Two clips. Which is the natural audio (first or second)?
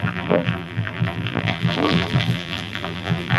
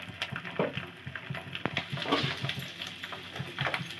second